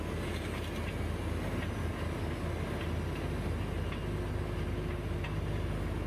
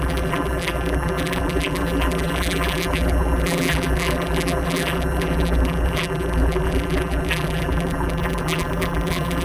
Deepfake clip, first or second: second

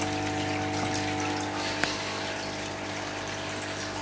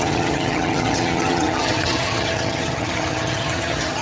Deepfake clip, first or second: second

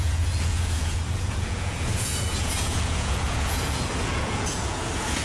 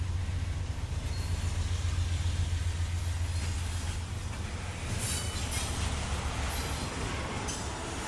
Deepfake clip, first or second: first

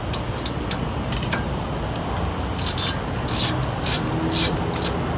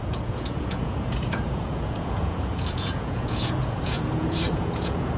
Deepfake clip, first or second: second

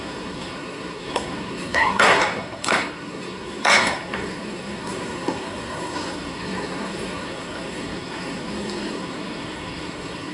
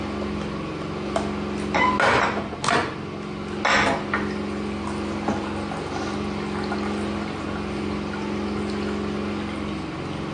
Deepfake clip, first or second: first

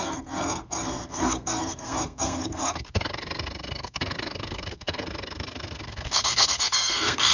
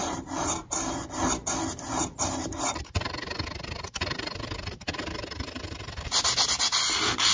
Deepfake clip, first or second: first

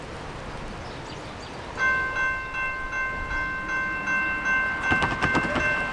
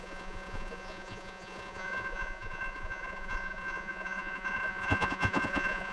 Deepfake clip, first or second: second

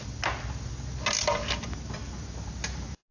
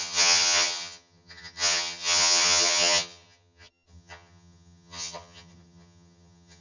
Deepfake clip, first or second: second